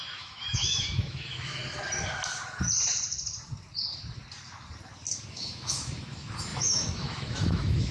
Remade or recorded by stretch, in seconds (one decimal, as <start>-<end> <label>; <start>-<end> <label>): 0.0-1.6 remade; 1.6-5.3 recorded; 5.3-7.9 remade